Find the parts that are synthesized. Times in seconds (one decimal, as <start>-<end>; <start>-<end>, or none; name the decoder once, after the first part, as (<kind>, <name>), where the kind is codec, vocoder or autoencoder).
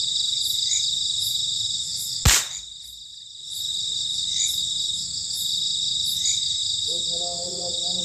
none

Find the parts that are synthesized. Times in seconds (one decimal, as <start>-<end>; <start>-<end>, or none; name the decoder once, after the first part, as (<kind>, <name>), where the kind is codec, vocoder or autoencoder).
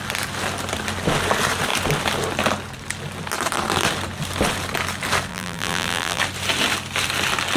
5.3-6.2 (vocoder, BigVGAN v2)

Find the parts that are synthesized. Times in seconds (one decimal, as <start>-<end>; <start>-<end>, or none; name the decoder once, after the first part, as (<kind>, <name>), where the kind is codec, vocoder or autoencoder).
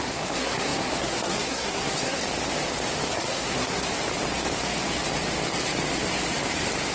0.0-2.2 (codec, SNAC); 3.1-3.8